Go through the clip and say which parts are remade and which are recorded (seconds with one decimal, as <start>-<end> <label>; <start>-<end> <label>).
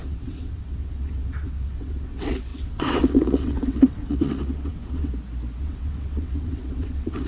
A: 0.0-5.1 remade; 5.1-5.6 recorded; 5.6-7.3 remade